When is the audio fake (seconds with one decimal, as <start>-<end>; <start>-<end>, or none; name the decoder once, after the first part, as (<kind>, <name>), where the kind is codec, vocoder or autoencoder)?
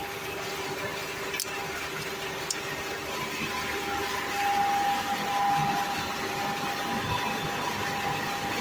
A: none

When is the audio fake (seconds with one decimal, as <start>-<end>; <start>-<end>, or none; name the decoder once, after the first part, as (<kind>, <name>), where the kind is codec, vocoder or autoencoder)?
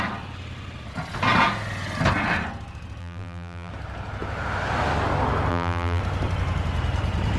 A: 3.0-3.7 (vocoder, BigVGAN v2); 5.5-6.0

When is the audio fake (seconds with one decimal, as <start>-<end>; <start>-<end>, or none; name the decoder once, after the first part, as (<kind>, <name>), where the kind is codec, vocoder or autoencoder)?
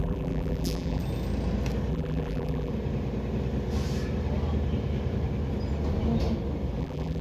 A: 0.0-1.0 (vocoder, BigVGAN v2); 1.9-2.7; 6.8-7.2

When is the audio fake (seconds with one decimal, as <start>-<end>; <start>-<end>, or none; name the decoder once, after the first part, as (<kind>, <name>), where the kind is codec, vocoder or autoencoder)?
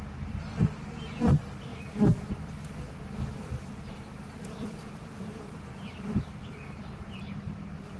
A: 0.0-8.0 (vocoder, BigVGAN v2)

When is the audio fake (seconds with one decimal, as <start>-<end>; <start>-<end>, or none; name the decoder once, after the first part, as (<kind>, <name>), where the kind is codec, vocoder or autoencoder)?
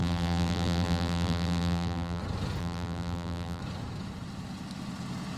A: 0.0-2.2 (vocoder, BigVGAN v2); 2.6-3.6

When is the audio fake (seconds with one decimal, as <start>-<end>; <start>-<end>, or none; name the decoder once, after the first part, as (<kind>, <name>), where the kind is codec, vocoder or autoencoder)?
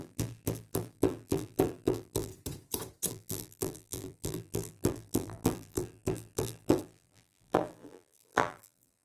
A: 0.0-2.3 (vocoder, BigVGAN v2); 3.1-9.0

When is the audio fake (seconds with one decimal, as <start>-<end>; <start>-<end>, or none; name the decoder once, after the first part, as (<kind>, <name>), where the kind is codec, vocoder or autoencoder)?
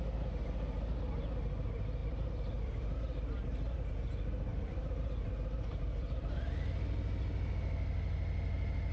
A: 4.5-5.3 (vocoder, BigVGAN v2)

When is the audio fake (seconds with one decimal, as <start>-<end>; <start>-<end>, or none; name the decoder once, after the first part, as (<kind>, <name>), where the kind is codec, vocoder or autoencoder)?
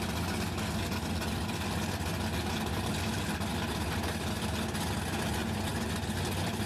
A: none